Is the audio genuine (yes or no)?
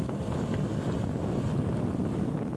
yes